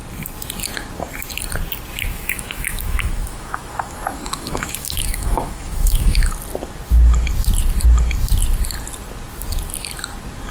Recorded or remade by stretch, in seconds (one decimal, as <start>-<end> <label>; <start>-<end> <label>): 0.0-2.1 recorded; 2.1-6.3 remade; 6.3-10.5 recorded